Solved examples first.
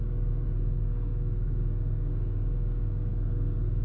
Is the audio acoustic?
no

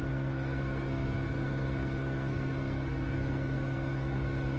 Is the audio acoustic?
no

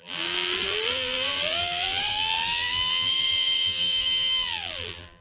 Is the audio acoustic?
no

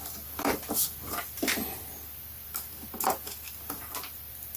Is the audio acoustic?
yes